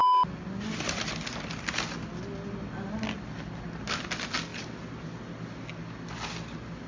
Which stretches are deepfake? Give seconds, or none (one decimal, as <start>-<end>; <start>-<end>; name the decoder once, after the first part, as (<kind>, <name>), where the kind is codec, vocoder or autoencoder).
none

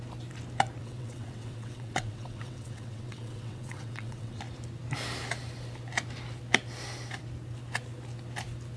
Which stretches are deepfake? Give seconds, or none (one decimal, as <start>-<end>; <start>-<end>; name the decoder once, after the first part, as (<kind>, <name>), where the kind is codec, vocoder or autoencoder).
0.8-4.4 (vocoder, WaveNeXt)

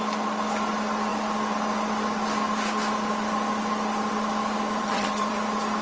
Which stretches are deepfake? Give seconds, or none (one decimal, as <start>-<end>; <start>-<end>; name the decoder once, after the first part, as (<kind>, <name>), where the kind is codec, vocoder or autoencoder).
4.8-5.3 (vocoder, HiFi-GAN)